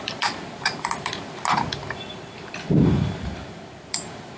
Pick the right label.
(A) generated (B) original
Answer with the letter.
A